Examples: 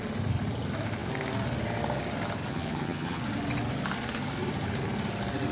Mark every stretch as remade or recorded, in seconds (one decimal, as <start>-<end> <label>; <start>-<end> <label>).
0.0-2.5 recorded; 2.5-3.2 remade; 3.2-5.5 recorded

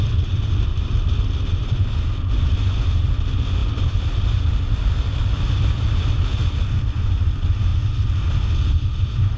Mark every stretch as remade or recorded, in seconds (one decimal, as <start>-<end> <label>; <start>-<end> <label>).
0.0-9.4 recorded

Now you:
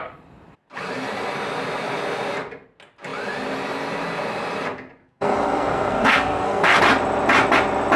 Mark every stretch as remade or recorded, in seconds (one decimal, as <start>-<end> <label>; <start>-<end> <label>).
0.0-5.0 recorded; 5.0-6.8 remade; 6.8-8.0 recorded

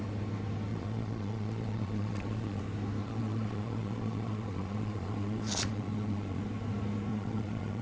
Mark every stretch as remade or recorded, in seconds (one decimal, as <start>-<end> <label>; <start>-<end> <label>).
0.0-0.7 recorded; 0.7-2.6 remade; 2.6-3.0 recorded; 3.0-6.4 remade; 6.4-7.1 recorded; 7.1-7.8 remade